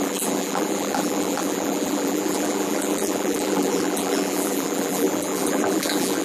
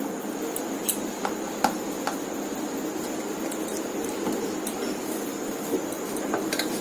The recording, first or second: second